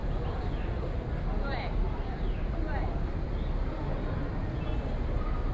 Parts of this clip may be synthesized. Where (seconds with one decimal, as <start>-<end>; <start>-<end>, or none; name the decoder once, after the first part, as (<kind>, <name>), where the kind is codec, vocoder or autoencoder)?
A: none

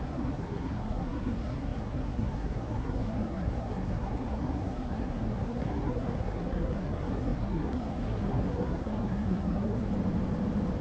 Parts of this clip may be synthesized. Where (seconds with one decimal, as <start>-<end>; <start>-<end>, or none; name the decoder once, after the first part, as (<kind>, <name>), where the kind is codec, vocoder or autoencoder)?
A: 0.0-9.9 (codec, SNAC)